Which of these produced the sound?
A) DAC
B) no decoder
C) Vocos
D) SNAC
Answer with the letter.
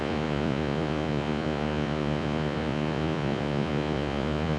C